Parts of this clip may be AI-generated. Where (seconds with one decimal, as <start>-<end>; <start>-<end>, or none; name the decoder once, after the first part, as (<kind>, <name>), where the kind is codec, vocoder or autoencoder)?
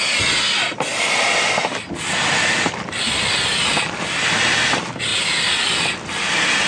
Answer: none